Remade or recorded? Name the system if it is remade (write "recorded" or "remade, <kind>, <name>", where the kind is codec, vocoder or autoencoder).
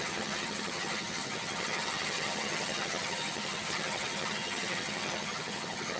remade, vocoder, HiFi-GAN